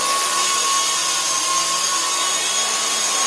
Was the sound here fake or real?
real